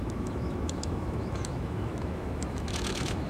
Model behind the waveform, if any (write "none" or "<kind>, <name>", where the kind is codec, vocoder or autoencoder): autoencoder, DAC-VAE